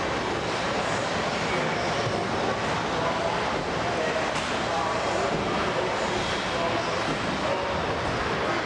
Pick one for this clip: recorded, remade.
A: recorded